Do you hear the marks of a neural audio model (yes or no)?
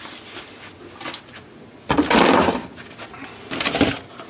no